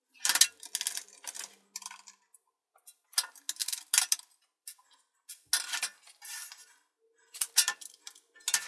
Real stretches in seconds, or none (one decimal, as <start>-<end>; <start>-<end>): 0.0-8.7